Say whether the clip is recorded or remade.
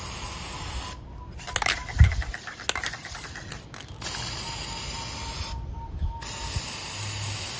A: recorded